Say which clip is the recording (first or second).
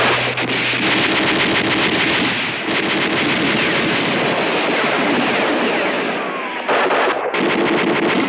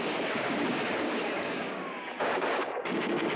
first